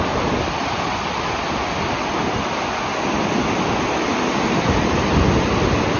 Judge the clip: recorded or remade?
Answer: recorded